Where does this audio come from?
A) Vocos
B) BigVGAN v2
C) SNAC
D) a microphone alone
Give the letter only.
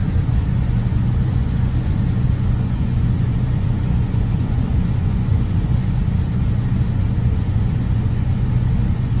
A